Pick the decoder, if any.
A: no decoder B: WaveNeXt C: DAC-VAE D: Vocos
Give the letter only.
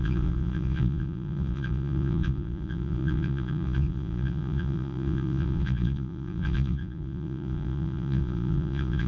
D